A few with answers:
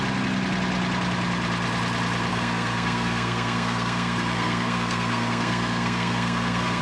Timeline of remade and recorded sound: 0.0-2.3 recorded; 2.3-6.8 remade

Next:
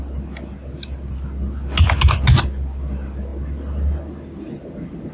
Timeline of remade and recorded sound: 0.0-5.1 recorded